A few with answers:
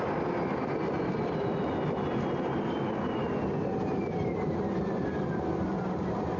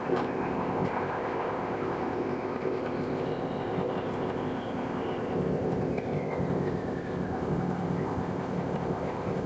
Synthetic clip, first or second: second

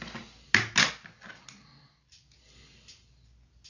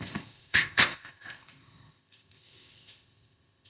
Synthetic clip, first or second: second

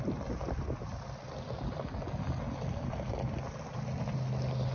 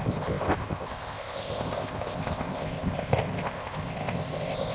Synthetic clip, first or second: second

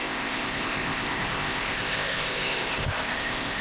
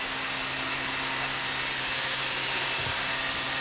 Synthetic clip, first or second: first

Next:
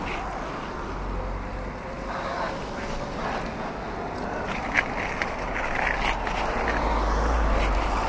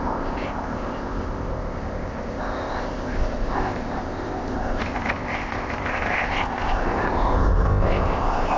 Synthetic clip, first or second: second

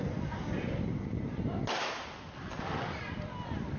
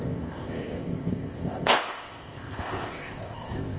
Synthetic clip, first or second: second